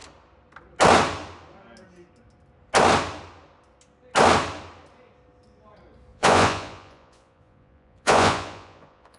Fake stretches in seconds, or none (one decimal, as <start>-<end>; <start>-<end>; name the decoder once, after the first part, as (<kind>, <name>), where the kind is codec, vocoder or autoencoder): 6.1-9.2 (vocoder, Vocos)